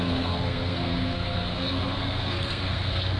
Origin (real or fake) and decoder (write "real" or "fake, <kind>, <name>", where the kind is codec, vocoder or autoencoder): fake, codec, SNAC